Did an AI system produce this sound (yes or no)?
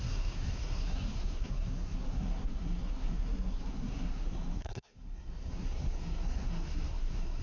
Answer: yes